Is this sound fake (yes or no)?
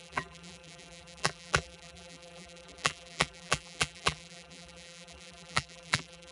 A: yes